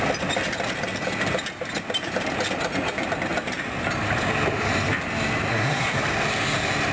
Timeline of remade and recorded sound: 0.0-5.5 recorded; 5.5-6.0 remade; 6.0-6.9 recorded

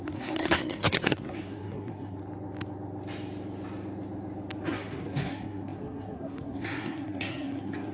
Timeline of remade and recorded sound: 0.0-2.2 remade; 2.2-4.7 recorded; 4.7-7.9 remade

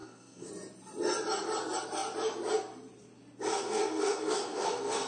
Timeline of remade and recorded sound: 0.0-0.5 remade; 0.5-3.5 recorded; 3.5-5.1 remade

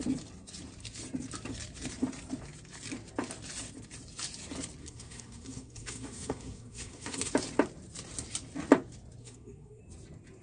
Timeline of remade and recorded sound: 0.0-4.8 recorded; 4.8-7.3 remade; 7.3-9.2 recorded; 9.2-9.8 remade; 9.8-10.4 recorded

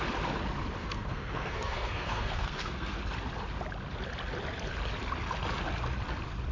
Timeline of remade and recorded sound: 0.0-0.8 recorded; 0.8-3.0 remade; 3.0-6.5 recorded

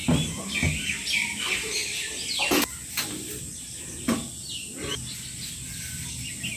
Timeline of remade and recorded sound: 0.0-6.6 recorded

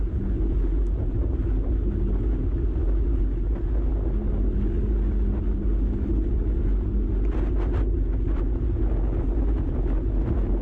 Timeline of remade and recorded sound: 0.0-10.6 recorded

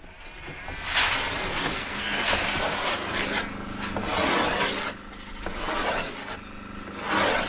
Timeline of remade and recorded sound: 0.0-1.5 recorded; 1.5-2.3 remade; 2.3-7.5 recorded